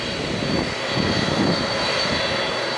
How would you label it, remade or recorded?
recorded